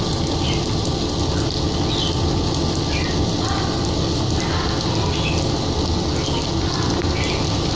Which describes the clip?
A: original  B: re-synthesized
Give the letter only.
A